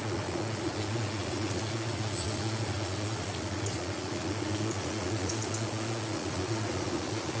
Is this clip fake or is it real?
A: fake